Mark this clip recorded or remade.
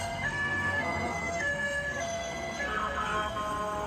remade